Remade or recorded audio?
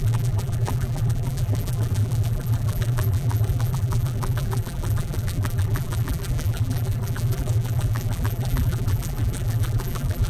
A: remade